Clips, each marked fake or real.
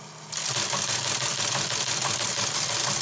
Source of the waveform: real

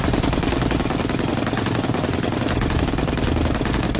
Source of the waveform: real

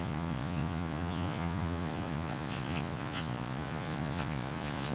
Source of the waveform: fake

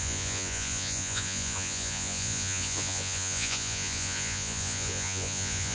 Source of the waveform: fake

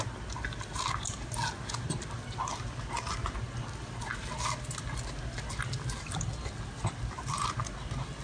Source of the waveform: real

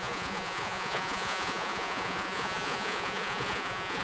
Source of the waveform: fake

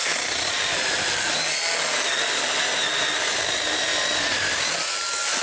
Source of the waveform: real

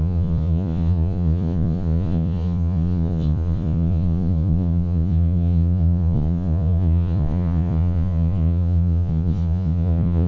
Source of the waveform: fake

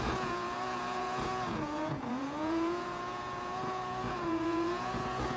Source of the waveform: fake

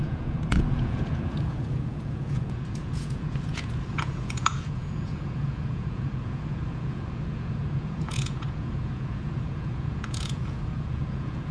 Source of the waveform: fake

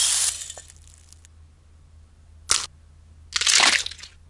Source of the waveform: real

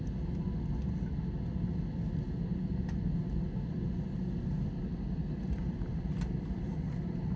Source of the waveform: real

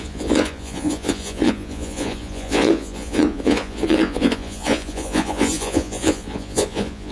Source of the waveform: fake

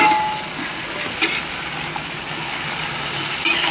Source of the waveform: real